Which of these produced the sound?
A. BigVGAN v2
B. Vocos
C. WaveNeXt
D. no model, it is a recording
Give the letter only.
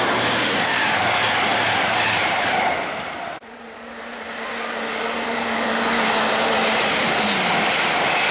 D